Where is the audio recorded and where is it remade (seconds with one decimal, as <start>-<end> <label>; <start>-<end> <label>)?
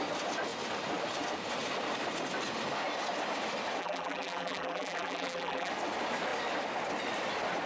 0.0-3.8 recorded; 3.8-5.7 remade; 5.7-7.7 recorded